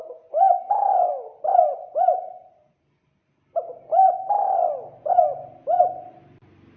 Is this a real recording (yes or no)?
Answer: yes